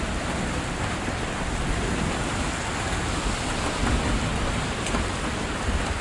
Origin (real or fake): real